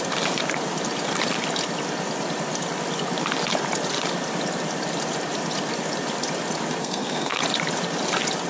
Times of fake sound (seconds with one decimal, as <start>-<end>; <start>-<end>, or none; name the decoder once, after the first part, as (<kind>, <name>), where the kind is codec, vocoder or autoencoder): 6.8-7.4 (codec, SNAC)